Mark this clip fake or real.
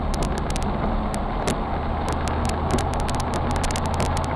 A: real